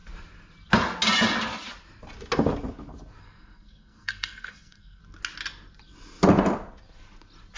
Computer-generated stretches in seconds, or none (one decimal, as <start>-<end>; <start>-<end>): 3.2-5.0

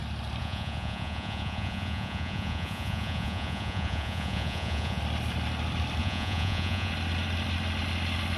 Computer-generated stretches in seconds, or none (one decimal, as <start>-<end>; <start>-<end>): 0.4-5.0; 6.0-6.9

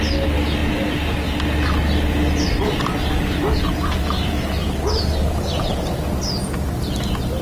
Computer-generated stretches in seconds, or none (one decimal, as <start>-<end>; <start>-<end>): 4.6-5.8